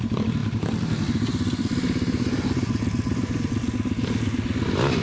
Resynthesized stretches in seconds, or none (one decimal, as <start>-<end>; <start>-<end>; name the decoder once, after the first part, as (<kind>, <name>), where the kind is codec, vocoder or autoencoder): 0.4-3.4 (vocoder, BigVGAN v2)